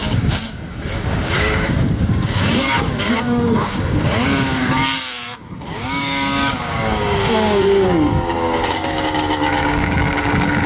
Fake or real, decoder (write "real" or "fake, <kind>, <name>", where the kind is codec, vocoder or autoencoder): fake, codec, DAC